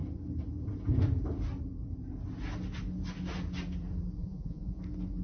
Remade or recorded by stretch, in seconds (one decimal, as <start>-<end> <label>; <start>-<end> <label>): 0.0-4.2 recorded; 4.2-4.8 remade; 4.8-5.2 recorded